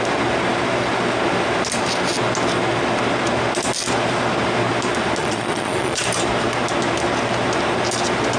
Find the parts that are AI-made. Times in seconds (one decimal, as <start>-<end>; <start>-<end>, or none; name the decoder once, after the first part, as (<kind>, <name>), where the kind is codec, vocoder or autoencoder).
5.2-6.0 (vocoder, Vocos)